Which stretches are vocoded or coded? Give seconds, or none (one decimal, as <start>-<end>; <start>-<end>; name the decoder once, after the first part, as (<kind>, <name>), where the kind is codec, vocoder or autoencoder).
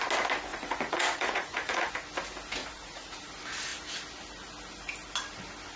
0.5-1.9 (vocoder, Vocos); 2.6-3.3